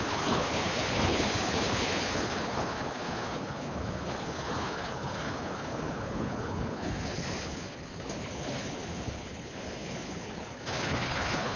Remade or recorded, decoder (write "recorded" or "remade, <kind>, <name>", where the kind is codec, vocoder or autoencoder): remade, codec, HILCodec